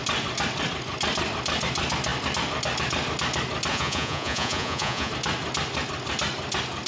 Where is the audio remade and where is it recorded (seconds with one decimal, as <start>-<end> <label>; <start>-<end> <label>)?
0.0-3.7 recorded; 3.7-5.1 remade; 5.1-6.9 recorded